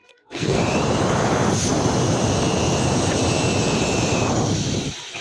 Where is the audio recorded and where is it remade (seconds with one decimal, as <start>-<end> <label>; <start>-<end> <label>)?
0.0-0.6 remade; 0.6-5.2 recorded